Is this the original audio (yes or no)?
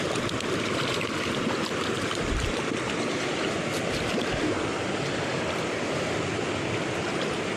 no